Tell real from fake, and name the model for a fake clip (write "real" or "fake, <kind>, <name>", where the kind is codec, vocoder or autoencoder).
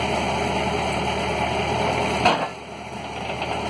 real